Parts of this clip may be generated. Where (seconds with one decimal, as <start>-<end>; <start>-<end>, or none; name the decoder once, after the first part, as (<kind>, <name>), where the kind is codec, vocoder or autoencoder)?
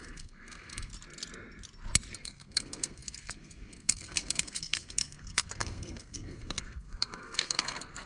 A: 0.0-0.9 (codec, SNAC); 2.2-8.1